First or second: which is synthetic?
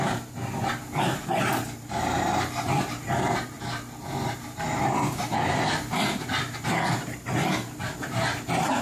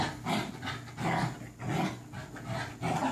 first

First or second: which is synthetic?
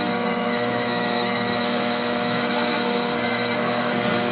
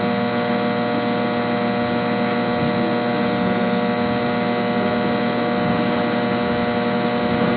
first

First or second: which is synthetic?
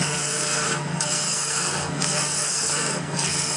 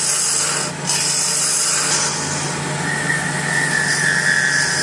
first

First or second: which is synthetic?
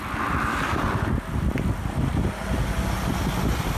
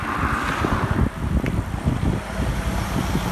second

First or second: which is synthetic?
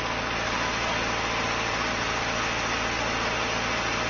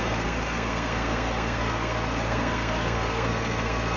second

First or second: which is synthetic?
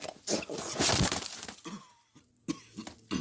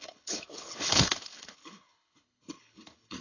second